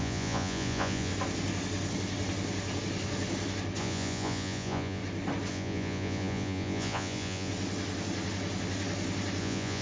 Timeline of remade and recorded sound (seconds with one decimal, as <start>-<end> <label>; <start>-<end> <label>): 0.0-1.1 remade; 1.1-3.8 recorded; 3.8-5.0 remade; 5.0-5.5 recorded; 5.5-7.5 remade; 7.5-9.4 recorded; 9.4-9.8 remade